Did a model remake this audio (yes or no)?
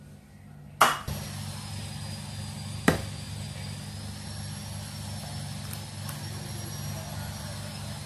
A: no